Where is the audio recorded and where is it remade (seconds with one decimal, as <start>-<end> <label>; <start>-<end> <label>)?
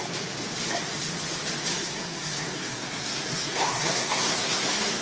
0.0-1.7 recorded; 1.7-5.0 remade